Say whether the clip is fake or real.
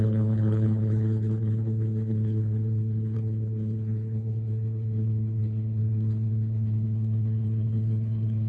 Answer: fake